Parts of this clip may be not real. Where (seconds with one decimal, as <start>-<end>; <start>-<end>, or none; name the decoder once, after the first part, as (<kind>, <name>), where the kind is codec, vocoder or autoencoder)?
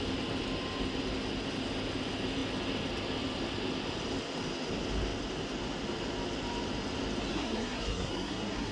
7.3-8.7 (codec, SNAC)